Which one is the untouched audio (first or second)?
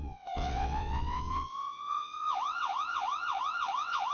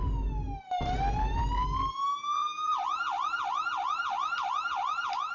second